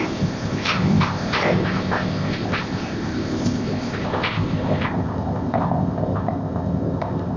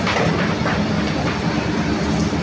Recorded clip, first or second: second